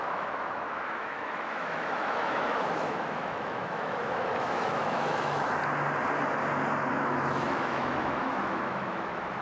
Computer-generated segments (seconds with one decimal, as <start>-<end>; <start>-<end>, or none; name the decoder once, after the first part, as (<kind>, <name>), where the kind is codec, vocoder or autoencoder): 0.0-5.6 (autoencoder, DAC-VAE); 6.9-9.4